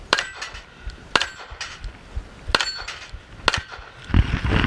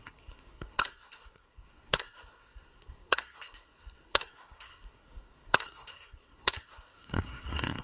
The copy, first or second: second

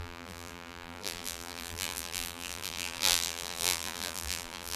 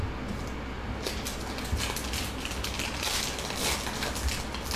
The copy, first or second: first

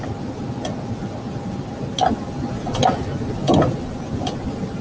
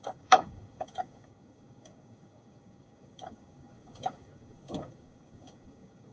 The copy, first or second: second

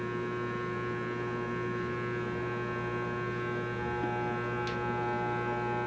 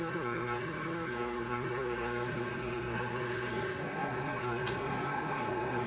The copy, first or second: second